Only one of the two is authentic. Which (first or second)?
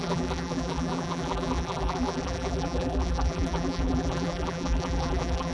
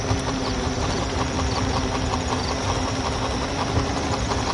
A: second